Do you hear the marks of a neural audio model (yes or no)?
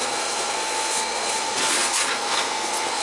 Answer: yes